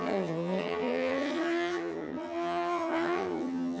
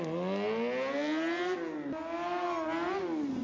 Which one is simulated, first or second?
first